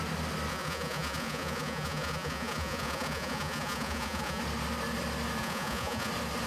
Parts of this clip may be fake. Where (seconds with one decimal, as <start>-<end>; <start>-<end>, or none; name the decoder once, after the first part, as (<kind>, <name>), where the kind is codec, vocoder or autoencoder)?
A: 0.5-4.4 (vocoder, Vocos); 5.4-6.1